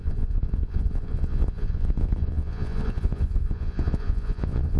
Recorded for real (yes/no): no